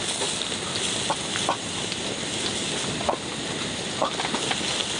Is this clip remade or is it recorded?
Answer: recorded